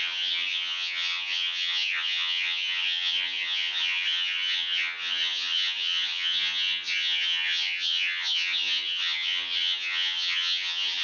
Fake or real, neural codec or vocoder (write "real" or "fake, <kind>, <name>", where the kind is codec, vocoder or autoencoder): fake, vocoder, HiFi-GAN